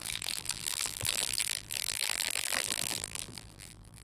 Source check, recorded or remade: remade